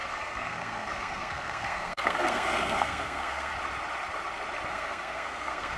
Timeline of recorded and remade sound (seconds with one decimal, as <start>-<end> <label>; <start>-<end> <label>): 0.0-3.5 remade; 3.5-4.7 recorded; 4.7-5.8 remade